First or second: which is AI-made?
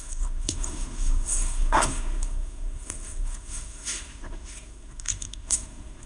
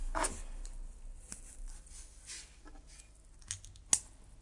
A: first